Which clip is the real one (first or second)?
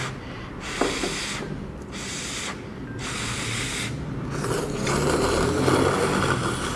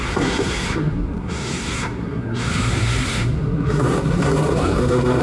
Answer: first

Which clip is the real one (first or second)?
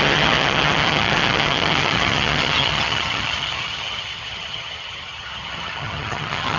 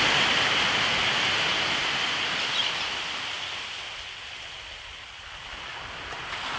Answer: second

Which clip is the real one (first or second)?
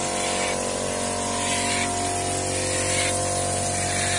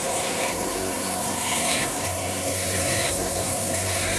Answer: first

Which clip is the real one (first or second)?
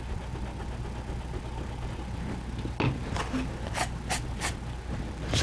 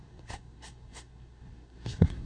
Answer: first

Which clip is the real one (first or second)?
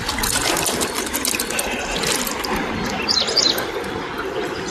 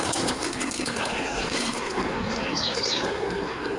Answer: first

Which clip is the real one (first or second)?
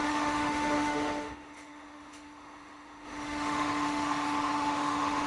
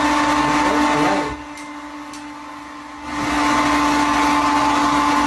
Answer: second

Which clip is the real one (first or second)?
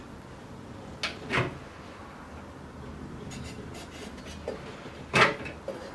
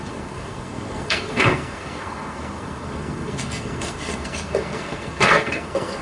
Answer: first